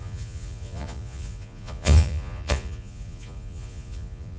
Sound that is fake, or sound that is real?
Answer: fake